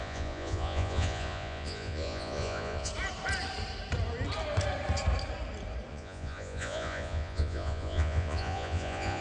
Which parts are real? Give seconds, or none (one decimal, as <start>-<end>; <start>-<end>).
2.9-5.9